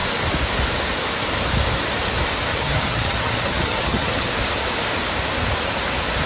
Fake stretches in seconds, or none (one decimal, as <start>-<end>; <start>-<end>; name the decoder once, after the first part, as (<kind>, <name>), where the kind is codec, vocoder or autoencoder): 2.5-4.3 (vocoder, HiFi-GAN)